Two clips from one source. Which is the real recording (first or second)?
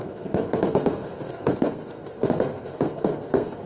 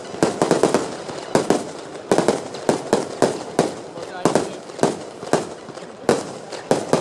second